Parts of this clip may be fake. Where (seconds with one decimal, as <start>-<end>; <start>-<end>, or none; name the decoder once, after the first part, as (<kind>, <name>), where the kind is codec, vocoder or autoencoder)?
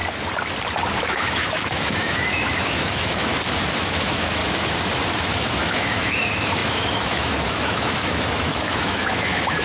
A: 1.0-3.3 (autoencoder, DAC-VAE); 3.8-4.4; 5.2-9.6